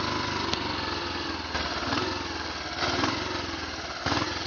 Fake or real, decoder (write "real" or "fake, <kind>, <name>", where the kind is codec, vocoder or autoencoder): real